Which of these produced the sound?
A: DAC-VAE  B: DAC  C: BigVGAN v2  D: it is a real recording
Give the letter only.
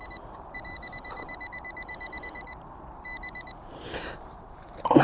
C